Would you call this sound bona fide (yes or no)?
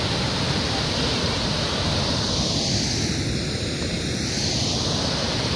yes